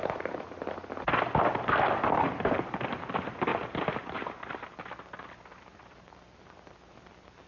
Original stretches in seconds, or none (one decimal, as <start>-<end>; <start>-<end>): 0.0-7.5